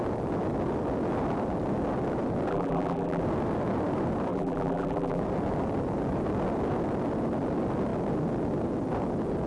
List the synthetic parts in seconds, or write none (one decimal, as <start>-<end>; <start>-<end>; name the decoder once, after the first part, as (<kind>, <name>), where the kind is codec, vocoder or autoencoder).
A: 2.5-3.2 (vocoder, BigVGAN v2); 4.3-5.2